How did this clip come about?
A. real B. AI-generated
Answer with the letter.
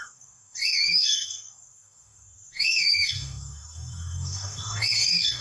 B